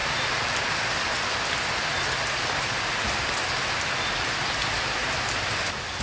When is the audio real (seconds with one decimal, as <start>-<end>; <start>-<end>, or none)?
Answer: 0.0-6.0

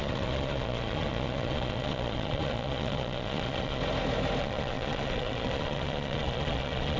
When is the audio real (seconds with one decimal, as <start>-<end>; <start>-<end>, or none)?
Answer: 3.8-4.4

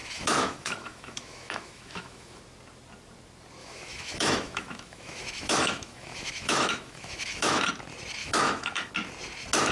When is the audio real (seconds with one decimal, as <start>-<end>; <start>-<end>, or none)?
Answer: 2.4-3.6; 7.7-8.2; 8.9-9.7

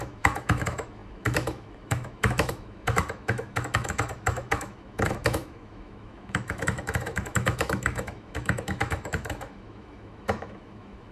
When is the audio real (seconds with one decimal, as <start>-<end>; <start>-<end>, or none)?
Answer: none

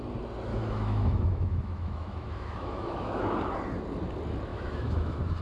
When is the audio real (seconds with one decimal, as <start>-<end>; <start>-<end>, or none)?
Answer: 0.0-0.5; 3.2-4.5

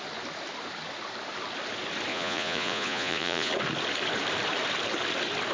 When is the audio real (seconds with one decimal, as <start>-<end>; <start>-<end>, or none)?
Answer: 0.0-2.1; 3.5-5.5

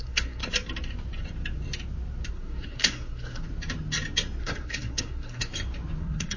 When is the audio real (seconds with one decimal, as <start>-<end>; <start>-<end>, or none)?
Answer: 0.4-2.3; 3.5-4.4; 5.5-6.0

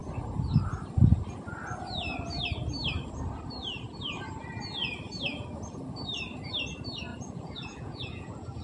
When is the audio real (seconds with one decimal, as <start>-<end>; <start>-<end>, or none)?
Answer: 0.0-7.1